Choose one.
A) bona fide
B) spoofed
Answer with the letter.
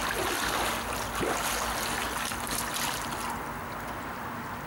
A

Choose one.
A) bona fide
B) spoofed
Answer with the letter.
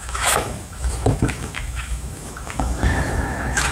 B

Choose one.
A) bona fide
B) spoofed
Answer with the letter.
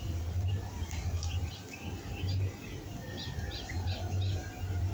A